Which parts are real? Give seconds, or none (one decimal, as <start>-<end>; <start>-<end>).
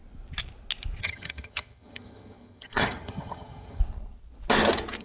0.0-1.0; 3.8-5.0